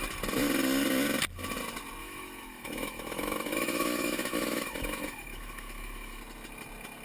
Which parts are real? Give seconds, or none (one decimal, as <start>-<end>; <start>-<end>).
0.0-2.0; 6.2-7.0